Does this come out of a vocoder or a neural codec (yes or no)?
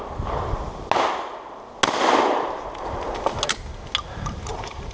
no